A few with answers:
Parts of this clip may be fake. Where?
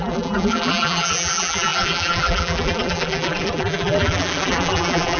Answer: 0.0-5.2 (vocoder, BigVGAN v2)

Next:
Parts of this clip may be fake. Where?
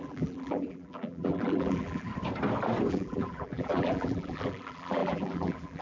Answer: 0.0-2.1 (vocoder, BigVGAN v2); 2.9-5.8